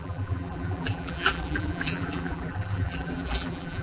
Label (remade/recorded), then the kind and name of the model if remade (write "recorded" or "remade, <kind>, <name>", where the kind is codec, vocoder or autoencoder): remade, vocoder, BigVGAN v2